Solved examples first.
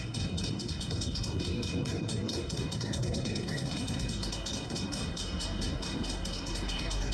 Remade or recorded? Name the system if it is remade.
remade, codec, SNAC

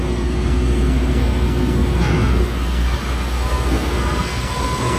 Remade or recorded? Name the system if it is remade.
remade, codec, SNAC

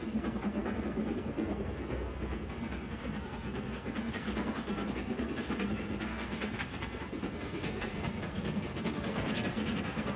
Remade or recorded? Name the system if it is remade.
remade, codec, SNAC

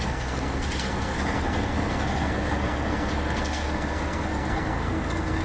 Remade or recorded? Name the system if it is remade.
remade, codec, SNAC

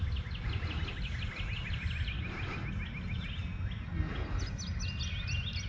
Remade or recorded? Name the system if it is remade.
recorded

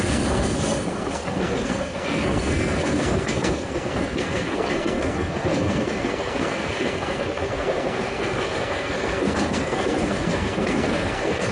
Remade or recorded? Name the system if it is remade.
remade, codec, SNAC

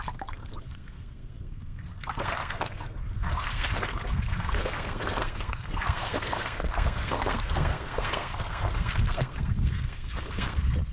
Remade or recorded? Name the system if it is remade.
remade, codec, SNAC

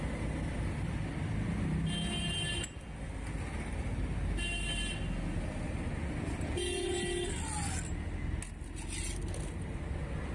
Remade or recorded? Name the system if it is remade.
recorded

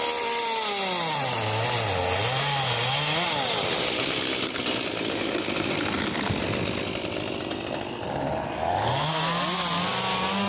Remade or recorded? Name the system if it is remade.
recorded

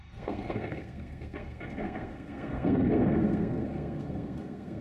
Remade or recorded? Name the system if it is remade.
remade, codec, SNAC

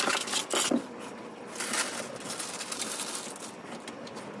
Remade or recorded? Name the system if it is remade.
recorded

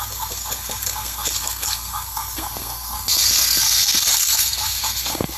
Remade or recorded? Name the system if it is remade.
remade, codec, SNAC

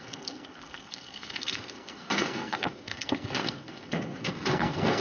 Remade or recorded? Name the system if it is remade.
remade, codec, SNAC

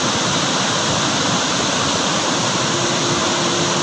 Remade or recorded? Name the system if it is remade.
recorded